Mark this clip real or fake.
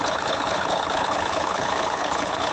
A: fake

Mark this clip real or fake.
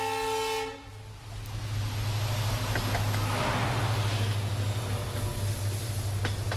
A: real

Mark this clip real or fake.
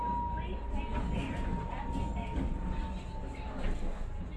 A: real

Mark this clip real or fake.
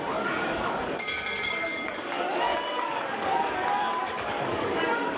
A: fake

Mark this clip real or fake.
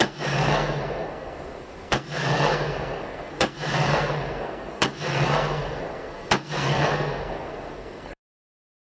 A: fake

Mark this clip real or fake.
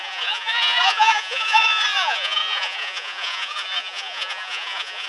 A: fake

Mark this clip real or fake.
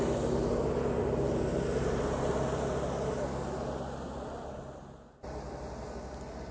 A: real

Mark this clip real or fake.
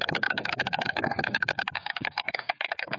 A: fake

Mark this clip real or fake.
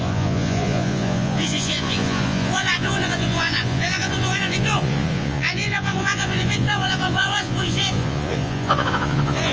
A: fake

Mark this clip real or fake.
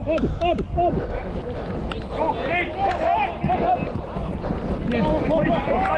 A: real